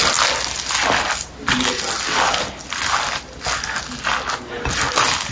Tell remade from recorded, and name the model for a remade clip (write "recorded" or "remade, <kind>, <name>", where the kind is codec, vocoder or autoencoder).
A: recorded